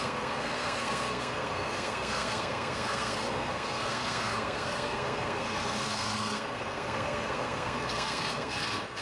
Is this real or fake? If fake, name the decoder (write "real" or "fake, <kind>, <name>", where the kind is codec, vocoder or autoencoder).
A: fake, codec, SNAC